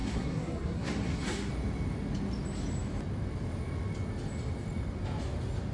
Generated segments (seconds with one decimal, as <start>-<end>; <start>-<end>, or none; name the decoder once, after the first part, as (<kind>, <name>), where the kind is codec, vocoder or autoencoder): 0.0-1.5 (codec, SNAC)